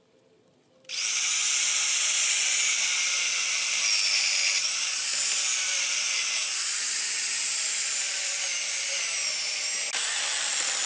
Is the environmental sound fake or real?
real